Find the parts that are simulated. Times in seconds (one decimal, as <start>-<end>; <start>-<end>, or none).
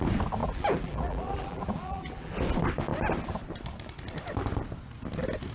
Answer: 0.4-2.3